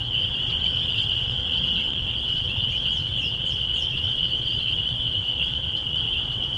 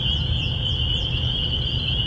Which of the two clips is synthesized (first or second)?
first